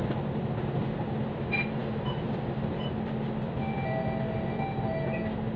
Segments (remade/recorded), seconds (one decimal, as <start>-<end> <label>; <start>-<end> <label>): 0.0-5.6 recorded